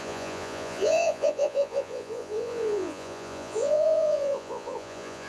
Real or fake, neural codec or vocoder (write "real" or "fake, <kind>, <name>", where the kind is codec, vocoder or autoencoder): fake, vocoder, Vocos